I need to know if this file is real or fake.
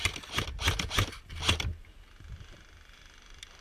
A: real